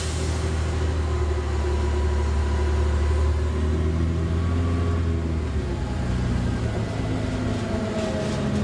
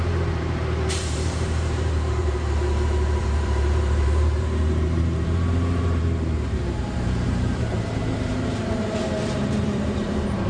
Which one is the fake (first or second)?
second